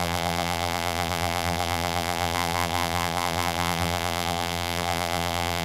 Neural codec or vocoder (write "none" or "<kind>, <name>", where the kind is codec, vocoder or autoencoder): vocoder, BigVGAN v2